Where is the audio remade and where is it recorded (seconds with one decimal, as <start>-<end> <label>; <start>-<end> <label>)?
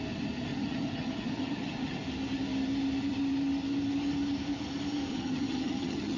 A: 0.0-0.5 recorded; 0.5-2.0 remade; 2.0-5.1 recorded; 5.1-6.2 remade